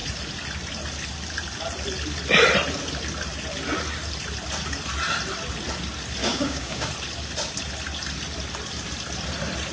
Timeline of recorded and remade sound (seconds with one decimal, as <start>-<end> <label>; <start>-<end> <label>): 0.0-6.2 recorded; 6.2-6.9 remade; 6.9-9.7 recorded